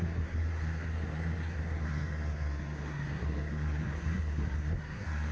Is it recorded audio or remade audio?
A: remade